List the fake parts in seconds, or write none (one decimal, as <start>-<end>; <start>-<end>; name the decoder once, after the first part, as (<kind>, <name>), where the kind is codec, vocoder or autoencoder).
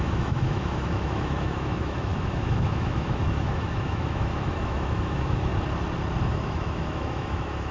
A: 0.0-5.5 (autoencoder, DAC-VAE); 6.3-7.7